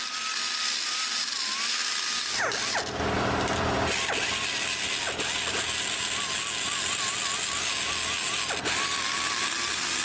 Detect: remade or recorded recorded